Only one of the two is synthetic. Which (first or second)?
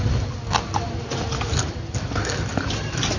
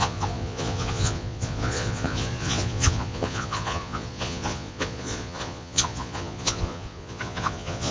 second